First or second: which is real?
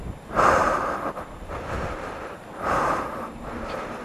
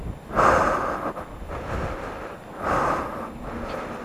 second